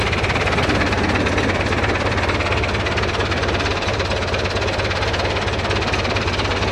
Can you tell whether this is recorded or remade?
recorded